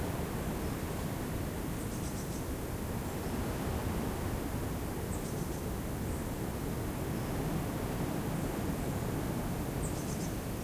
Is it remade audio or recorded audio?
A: recorded